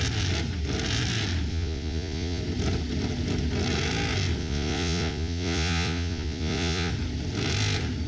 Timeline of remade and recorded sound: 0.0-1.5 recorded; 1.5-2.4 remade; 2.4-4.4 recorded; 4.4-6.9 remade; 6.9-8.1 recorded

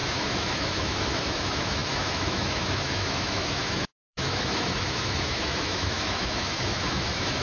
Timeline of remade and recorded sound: 0.0-7.4 remade

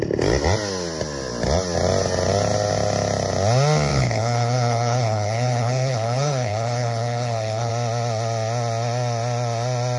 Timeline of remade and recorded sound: 0.0-3.9 recorded; 3.9-7.7 remade; 7.7-10.0 recorded

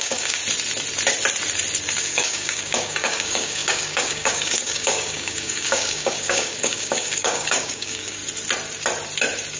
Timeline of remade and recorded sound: 0.0-0.4 remade; 0.4-2.0 recorded; 2.0-8.2 remade; 8.2-9.6 recorded